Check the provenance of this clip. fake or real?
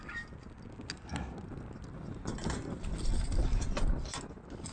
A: real